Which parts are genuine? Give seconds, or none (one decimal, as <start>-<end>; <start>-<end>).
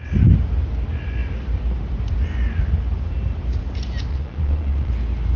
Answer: 0.0-4.1; 4.9-5.4